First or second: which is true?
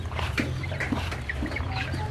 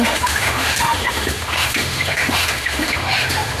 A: first